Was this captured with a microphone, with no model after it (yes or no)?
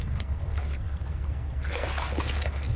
no